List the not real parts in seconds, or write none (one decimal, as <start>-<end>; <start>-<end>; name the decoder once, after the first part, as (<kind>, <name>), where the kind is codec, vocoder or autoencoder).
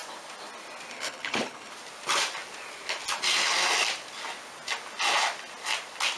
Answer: 0.9-1.7 (codec, HILCodec)